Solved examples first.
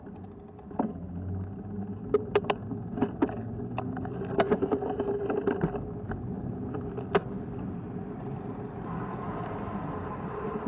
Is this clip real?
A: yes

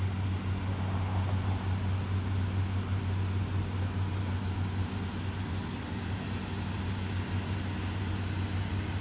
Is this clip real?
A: yes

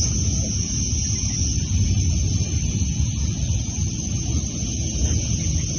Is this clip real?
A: yes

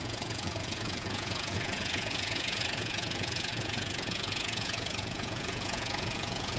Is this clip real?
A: no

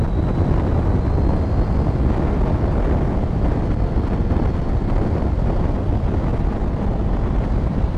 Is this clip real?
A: yes